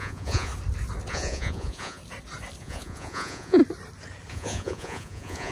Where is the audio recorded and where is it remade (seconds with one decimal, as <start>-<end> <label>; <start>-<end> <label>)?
0.0-0.5 remade; 0.5-1.1 recorded; 1.1-2.0 remade; 2.0-2.6 recorded; 2.6-3.6 remade; 3.6-4.3 recorded; 4.3-5.5 remade